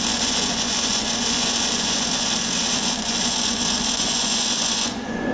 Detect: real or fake fake